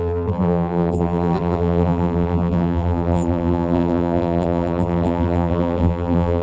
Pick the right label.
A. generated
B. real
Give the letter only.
A